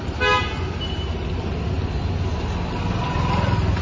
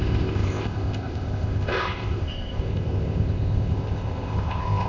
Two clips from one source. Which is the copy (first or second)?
second